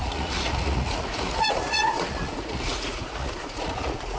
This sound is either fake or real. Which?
fake